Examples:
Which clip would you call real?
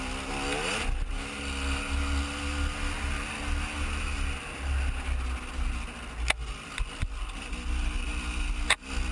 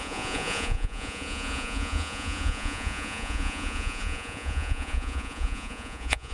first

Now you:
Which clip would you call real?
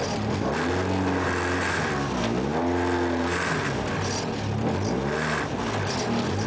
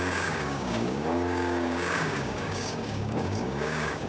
first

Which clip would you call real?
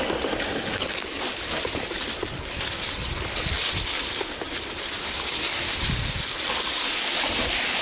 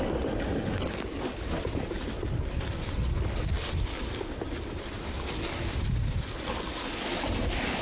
second